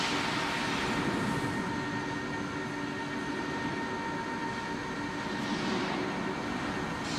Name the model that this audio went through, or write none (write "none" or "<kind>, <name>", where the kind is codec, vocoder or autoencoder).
none